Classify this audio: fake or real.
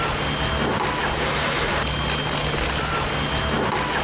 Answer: real